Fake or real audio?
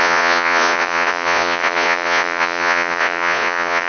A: fake